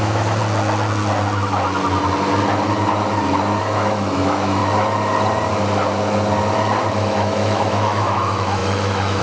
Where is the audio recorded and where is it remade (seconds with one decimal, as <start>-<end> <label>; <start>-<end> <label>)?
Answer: 0.0-0.4 remade; 0.4-3.6 recorded; 3.6-4.6 remade; 4.6-6.9 recorded; 6.9-9.2 remade

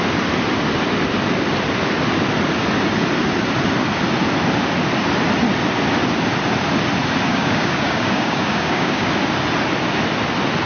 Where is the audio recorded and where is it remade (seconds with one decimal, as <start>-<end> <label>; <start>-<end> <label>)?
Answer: 0.0-7.3 recorded; 7.3-9.1 remade; 9.1-10.7 recorded